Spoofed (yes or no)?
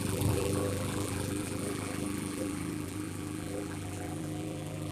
yes